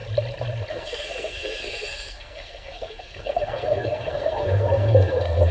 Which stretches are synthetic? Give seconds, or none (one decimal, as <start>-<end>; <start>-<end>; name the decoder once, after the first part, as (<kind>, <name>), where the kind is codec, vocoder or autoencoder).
0.7-5.5 (codec, SNAC)